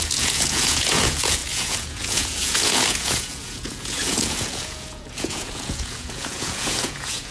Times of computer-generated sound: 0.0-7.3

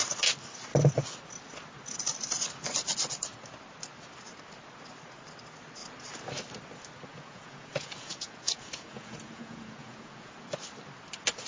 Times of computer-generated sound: 7.1-10.3

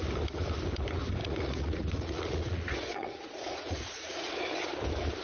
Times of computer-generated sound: 1.2-4.3

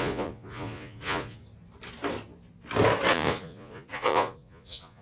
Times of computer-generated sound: 0.0-1.4; 3.1-5.0

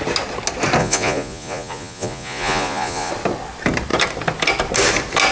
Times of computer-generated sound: 0.8-3.1

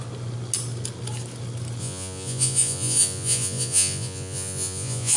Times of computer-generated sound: 1.8-5.2

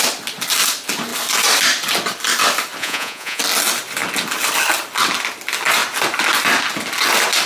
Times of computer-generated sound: 2.8-3.4